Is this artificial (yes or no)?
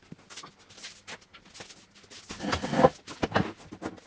no